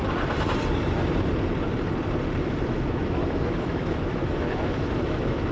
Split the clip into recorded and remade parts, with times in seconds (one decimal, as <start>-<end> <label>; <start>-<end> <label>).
0.0-2.4 recorded; 2.4-5.5 remade